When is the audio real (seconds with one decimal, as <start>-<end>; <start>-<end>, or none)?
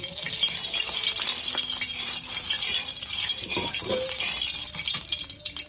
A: 0.0-1.9; 4.3-5.7